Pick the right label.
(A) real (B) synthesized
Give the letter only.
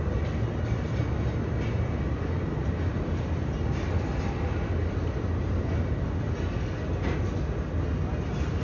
A